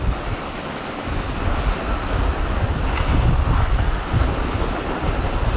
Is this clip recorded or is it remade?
recorded